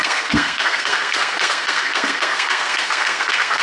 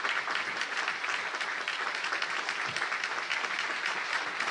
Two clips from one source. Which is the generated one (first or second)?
first